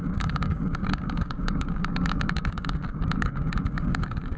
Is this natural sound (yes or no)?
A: no